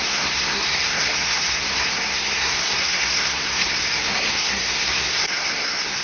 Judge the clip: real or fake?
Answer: fake